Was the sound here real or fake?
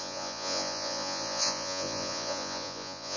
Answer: fake